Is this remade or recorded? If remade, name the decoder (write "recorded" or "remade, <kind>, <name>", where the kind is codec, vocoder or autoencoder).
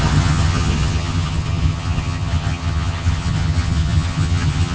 remade, vocoder, HiFi-GAN